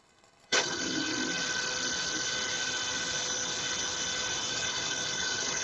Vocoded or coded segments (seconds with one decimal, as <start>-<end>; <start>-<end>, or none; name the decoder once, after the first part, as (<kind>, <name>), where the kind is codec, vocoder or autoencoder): 0.0-1.1 (codec, HILCodec); 4.5-5.6